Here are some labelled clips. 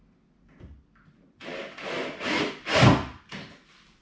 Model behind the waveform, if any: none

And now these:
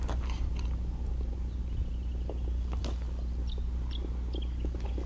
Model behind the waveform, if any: none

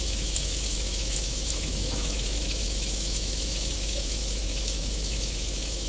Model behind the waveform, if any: autoencoder, DAC-VAE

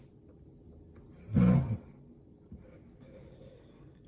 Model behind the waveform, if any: none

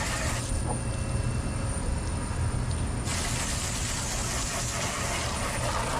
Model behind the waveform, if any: none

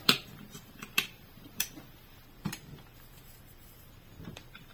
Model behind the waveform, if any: vocoder, BigVGAN v2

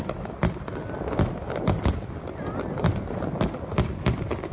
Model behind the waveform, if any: none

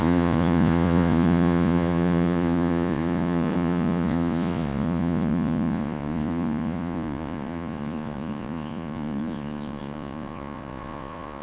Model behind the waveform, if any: vocoder, Vocos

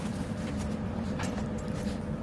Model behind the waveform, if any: vocoder, BigVGAN v2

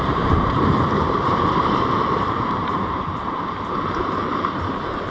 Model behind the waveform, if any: vocoder, BigVGAN v2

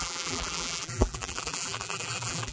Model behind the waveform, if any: vocoder, BigVGAN v2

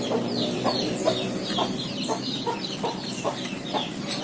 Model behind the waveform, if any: vocoder, BigVGAN v2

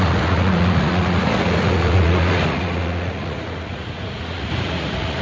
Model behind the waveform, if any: vocoder, Vocos